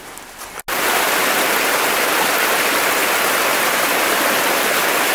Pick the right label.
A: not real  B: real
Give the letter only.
B